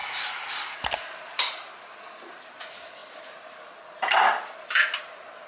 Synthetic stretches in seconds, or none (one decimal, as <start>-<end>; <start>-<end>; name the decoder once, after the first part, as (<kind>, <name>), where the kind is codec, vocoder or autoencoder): none